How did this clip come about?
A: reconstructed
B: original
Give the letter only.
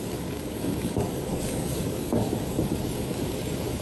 A